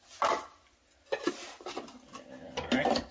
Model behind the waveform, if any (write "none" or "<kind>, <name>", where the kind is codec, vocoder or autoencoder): none